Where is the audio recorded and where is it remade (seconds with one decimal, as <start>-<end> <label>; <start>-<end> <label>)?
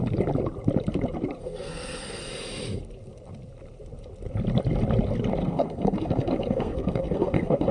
0.0-1.4 recorded; 1.4-2.2 remade; 2.2-5.4 recorded; 5.4-7.7 remade